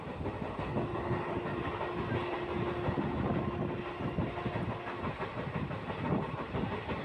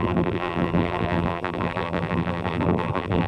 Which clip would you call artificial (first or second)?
second